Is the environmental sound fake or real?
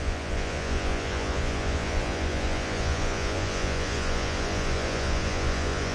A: fake